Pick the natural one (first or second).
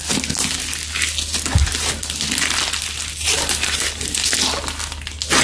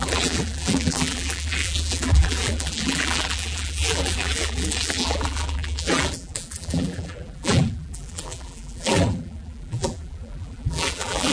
first